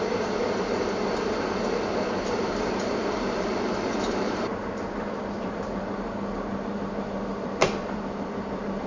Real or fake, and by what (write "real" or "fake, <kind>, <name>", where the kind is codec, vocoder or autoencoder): fake, vocoder, BigVGAN v2